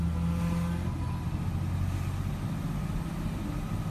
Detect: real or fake real